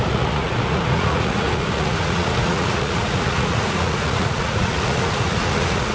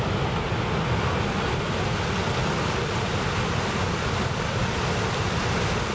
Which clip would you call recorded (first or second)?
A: second